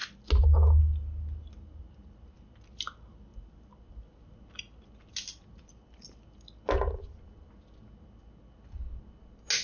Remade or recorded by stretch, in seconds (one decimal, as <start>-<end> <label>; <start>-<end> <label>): 0.0-9.6 recorded